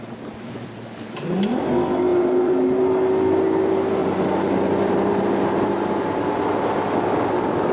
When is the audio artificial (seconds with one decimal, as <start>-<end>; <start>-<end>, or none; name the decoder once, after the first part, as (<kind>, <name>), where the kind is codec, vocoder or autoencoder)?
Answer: 2.1-2.8 (vocoder, BigVGAN v2); 4.0-6.2

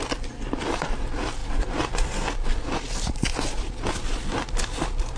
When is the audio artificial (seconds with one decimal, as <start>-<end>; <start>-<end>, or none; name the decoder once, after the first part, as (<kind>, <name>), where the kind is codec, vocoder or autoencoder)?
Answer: 1.4-1.9 (vocoder, BigVGAN v2)